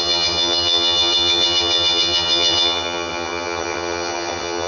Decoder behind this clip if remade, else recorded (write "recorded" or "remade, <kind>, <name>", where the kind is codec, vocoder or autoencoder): remade, vocoder, HiFi-GAN